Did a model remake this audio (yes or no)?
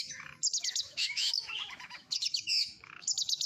yes